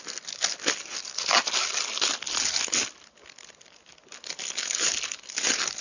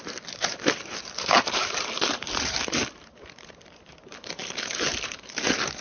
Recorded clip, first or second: first